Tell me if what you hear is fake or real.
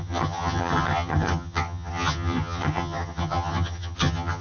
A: fake